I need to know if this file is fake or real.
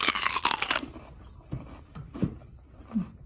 real